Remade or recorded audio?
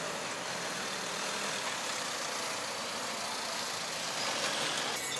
recorded